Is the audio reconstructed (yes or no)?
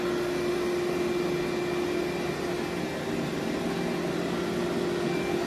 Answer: no